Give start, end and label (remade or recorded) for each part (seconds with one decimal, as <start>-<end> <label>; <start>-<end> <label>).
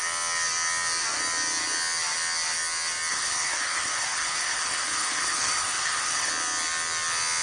0.0-3.1 recorded; 3.1-6.3 remade; 6.3-7.4 recorded